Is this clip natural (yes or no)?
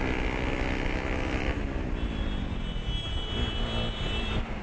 yes